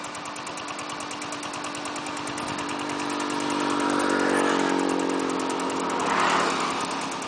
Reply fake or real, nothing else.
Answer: real